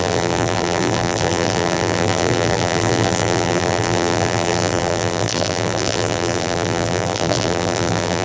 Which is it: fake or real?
fake